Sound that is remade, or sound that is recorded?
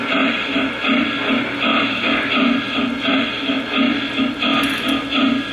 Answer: recorded